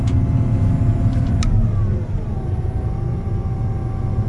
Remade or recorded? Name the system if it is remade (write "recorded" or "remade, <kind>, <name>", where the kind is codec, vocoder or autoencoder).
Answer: recorded